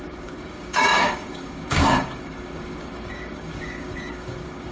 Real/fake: fake